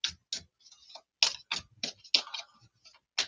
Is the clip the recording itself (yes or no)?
yes